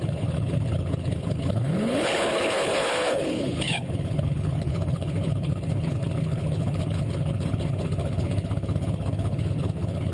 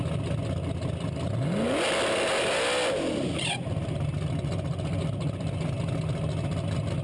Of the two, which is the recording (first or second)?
second